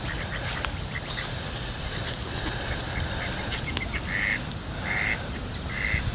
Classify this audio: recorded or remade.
recorded